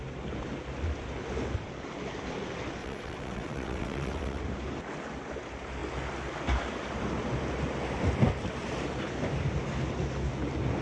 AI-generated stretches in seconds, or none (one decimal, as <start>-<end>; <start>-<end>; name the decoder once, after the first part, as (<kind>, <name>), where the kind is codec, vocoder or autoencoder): 2.8-4.4 (vocoder, WaveNeXt)